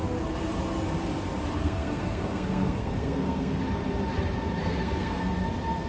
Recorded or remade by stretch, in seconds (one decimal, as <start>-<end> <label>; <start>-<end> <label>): 0.0-1.6 recorded; 1.6-3.6 remade; 3.6-4.6 recorded; 4.6-5.3 remade; 5.3-5.9 recorded